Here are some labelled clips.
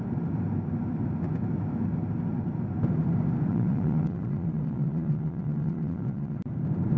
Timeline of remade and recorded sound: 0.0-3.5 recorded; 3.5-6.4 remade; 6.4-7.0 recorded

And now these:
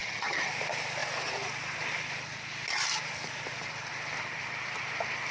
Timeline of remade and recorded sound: 0.0-0.5 remade; 0.5-5.3 recorded